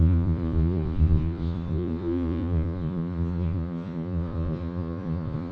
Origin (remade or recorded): remade